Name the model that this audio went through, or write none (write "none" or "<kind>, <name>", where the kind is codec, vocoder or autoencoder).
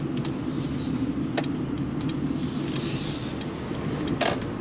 none